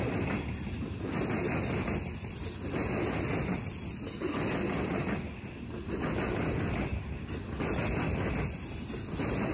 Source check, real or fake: real